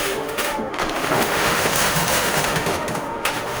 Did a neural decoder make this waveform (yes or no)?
yes